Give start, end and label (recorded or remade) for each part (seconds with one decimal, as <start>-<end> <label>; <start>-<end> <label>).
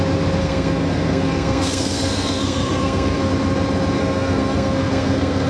0.0-0.4 recorded; 0.4-3.3 remade; 3.3-4.0 recorded; 4.0-5.5 remade